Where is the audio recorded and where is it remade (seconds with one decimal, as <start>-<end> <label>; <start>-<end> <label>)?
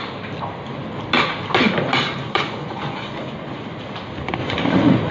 0.0-2.2 recorded; 2.2-3.6 remade; 3.6-4.4 recorded; 4.4-5.1 remade